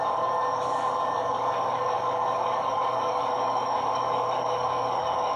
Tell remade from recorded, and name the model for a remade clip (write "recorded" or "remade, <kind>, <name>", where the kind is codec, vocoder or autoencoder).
remade, codec, DAC